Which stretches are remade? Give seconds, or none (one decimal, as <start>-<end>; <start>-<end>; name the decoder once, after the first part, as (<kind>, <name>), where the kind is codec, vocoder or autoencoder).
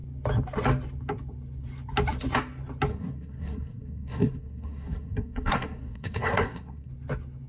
2.9-6.9 (codec, SNAC)